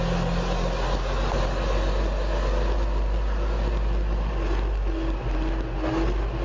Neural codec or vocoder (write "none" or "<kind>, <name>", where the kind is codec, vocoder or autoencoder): none